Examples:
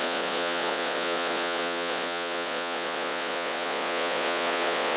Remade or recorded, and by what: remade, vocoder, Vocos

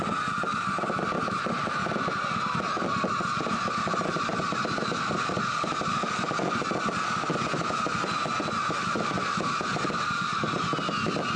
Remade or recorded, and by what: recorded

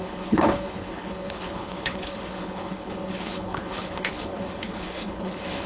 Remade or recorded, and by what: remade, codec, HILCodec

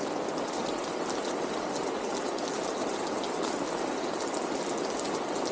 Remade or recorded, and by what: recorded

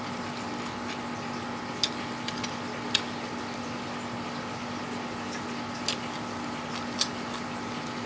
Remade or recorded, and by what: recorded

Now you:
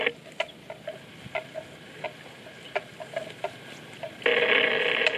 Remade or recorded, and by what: recorded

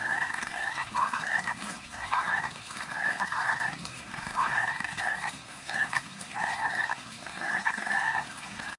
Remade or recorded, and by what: remade, codec, SNAC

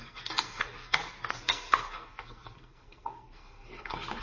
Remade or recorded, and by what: remade, codec, SNAC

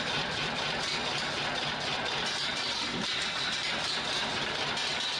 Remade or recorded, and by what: recorded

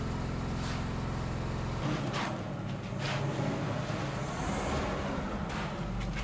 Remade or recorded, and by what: recorded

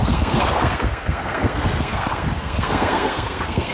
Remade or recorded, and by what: remade, codec, SNAC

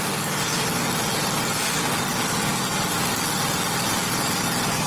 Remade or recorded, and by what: recorded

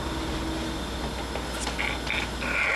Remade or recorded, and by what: recorded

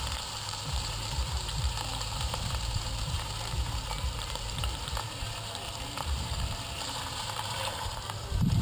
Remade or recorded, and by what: remade, vocoder, BigVGAN v2